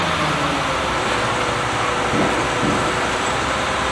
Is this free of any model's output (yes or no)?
yes